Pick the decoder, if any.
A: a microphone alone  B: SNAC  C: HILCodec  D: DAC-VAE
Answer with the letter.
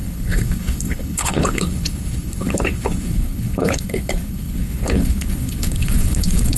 C